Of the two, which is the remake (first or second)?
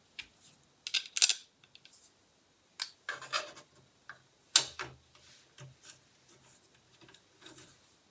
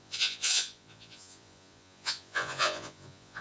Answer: second